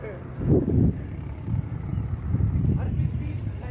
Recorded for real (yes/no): yes